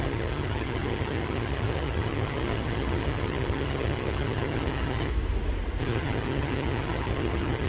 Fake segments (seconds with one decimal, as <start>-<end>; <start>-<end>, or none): 0.0-5.1; 5.8-7.7